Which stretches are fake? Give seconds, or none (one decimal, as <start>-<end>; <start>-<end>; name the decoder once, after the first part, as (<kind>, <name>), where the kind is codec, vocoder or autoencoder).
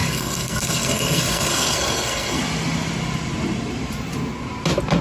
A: 0.0-2.4 (codec, SNAC)